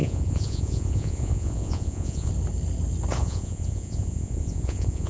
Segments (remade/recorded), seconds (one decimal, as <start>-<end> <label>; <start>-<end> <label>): 0.0-2.3 remade; 2.3-3.2 recorded; 3.2-5.1 remade